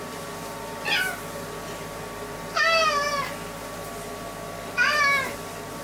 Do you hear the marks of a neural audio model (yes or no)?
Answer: no